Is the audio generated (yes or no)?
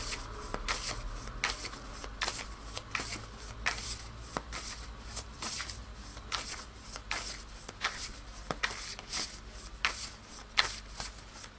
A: no